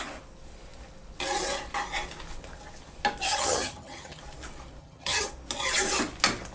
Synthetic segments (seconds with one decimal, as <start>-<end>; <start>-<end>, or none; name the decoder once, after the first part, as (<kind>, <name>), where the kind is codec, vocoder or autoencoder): 3.3-4.2 (vocoder, HiFi-GAN); 4.8-5.3